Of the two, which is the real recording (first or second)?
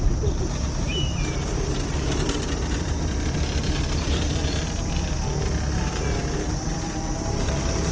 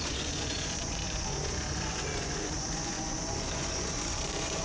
first